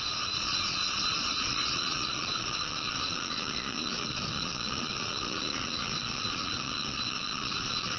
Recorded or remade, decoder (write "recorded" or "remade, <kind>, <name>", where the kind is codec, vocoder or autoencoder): remade, vocoder, Vocos